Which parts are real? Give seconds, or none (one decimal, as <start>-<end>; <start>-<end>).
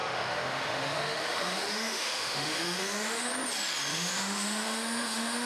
3.3-3.9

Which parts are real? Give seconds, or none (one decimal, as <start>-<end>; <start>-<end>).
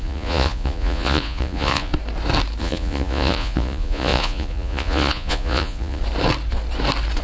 1.9-2.6; 6.0-7.2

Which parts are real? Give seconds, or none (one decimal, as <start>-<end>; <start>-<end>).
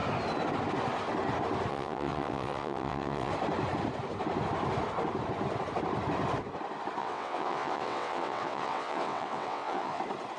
0.0-1.7; 3.3-7.0; 10.0-10.4